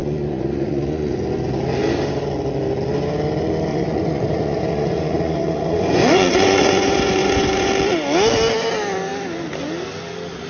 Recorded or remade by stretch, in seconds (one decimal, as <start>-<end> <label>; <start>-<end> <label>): 0.0-1.1 remade; 1.1-3.7 recorded; 3.7-7.7 remade; 7.7-10.5 recorded

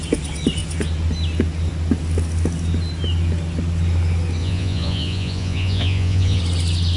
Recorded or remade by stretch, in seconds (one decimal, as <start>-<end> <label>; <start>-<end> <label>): 0.0-4.4 recorded; 4.4-6.4 remade; 6.4-7.0 recorded

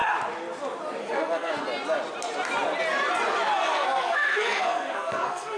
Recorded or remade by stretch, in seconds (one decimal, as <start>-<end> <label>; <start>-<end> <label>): 0.0-1.0 recorded; 1.0-1.5 remade; 1.5-3.6 recorded; 3.6-5.6 remade

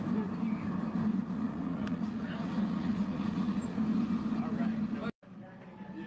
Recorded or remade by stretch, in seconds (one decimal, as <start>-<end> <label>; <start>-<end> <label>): 0.0-1.1 recorded; 1.1-3.8 remade; 3.8-6.1 recorded

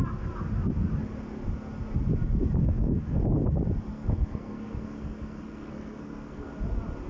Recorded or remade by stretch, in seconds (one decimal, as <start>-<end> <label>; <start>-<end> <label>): 0.0-2.6 recorded; 2.6-3.2 remade; 3.2-3.9 recorded; 3.9-6.5 remade; 6.5-7.1 recorded

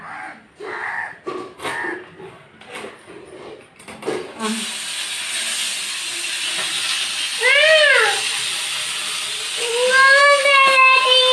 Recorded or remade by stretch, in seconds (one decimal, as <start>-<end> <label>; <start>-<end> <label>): 0.0-10.2 recorded; 10.2-10.8 remade; 10.8-11.3 recorded